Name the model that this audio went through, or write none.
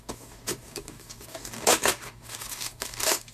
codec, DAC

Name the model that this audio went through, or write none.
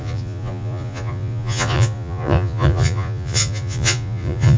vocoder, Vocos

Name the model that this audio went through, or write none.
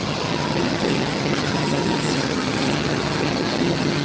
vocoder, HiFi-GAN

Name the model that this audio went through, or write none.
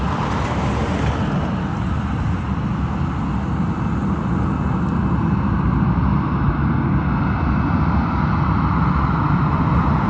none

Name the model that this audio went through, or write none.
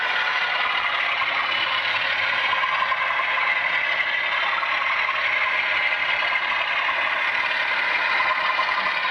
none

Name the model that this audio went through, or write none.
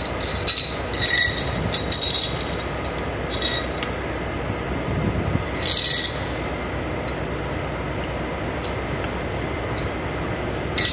none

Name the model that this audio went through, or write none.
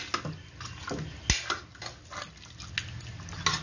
none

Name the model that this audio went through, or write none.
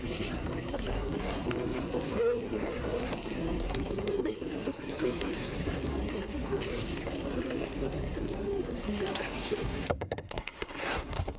codec, SNAC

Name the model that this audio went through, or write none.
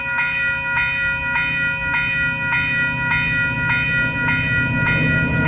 none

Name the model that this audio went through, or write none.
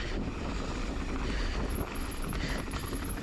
none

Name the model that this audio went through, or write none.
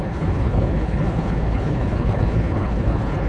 codec, HILCodec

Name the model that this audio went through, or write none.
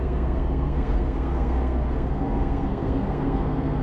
codec, SNAC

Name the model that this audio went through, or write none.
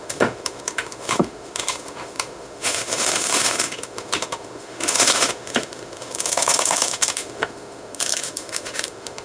autoencoder, DAC-VAE